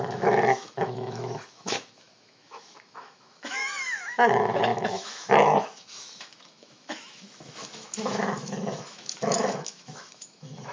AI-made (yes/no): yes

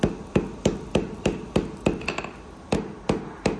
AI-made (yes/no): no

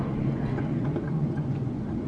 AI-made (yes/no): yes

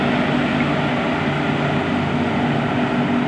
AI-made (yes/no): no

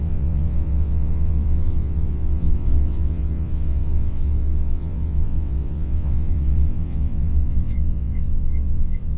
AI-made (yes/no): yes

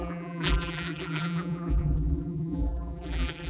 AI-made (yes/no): yes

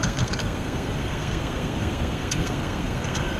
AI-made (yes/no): yes